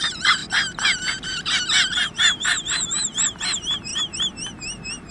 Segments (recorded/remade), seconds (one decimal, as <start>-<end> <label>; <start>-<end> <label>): 0.0-0.4 remade; 0.4-1.9 recorded; 1.9-3.9 remade; 3.9-5.1 recorded